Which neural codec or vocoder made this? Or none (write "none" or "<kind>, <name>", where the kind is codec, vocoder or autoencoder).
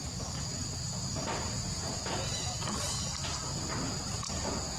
none